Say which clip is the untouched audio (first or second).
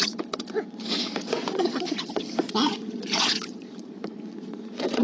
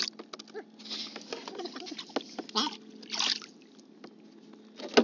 second